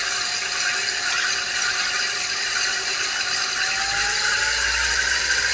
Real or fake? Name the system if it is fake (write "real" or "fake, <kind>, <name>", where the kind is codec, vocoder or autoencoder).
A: real